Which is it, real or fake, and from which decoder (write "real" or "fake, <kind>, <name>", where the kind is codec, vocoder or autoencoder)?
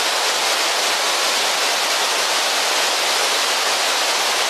real